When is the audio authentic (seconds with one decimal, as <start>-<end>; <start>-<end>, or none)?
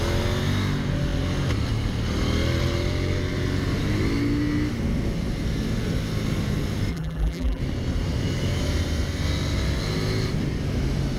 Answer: 0.0-6.9; 7.6-11.2